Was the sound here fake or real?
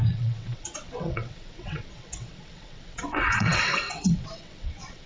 fake